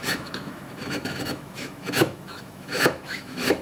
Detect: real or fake fake